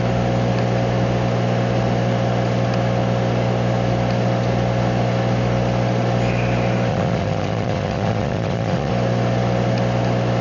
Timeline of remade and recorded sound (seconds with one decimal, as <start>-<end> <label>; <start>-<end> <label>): 0.0-6.9 recorded; 6.9-8.9 remade; 8.9-10.4 recorded